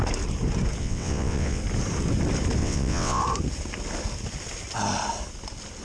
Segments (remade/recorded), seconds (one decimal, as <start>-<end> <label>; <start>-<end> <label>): 0.0-0.8 recorded; 0.8-1.6 remade; 1.6-2.6 recorded; 2.6-3.2 remade; 3.2-5.8 recorded